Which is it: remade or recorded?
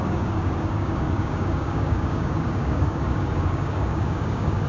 remade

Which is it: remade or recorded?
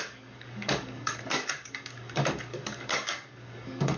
remade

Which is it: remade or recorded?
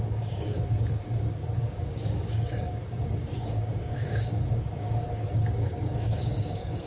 remade